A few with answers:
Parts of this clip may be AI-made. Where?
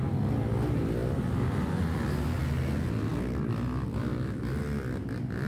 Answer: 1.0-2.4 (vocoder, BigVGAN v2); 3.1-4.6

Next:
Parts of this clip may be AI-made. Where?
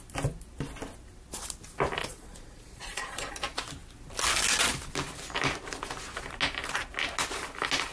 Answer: 2.0-3.3 (vocoder, Vocos)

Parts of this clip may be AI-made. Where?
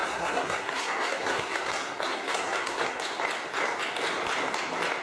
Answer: 0.0-3.0 (codec, SNAC)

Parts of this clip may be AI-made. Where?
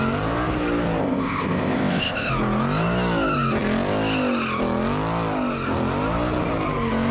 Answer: 1.0-2.3 (codec, ZipCodec)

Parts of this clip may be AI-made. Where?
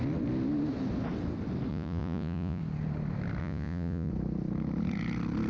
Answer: 1.7-2.6 (vocoder, Vocos); 3.4-4.1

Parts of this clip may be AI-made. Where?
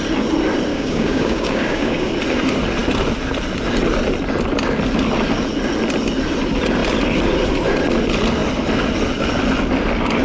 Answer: 0.7-2.1 (codec, DAC)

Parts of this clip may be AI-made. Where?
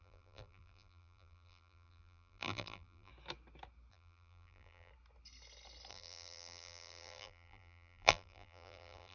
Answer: 0.0-3.1 (vocoder, BigVGAN v2); 3.9-4.9; 5.9-9.1